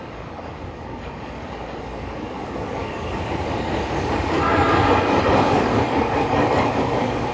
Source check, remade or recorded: remade